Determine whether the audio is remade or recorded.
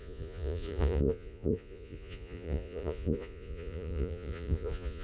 remade